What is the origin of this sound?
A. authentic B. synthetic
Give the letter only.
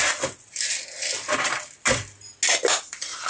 A